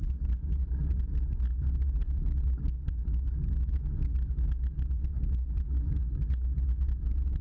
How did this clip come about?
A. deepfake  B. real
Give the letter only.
B